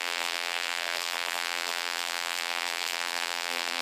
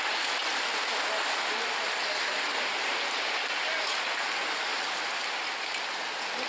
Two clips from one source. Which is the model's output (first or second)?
first